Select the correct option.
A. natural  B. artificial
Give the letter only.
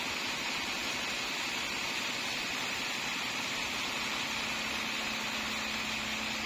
A